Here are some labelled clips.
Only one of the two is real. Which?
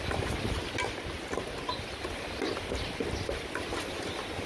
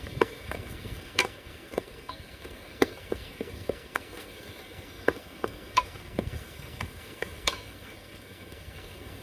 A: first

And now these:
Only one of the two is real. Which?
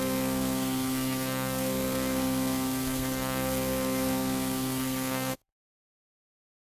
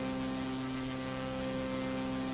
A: second